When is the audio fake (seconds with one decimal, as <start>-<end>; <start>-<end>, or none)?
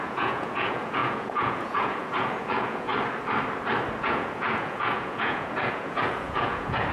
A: 0.0-2.9; 4.0-6.9